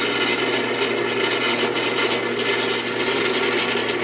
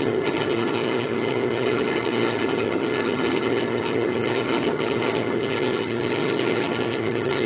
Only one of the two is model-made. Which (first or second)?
second